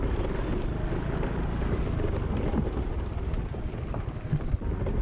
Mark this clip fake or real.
real